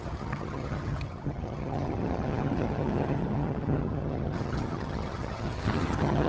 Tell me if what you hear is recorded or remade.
remade